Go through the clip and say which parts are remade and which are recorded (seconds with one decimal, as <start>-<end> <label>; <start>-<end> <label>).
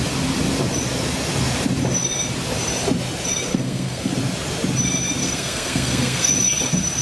0.0-3.5 recorded; 3.5-4.1 remade; 4.1-5.2 recorded; 5.2-6.3 remade; 6.3-7.0 recorded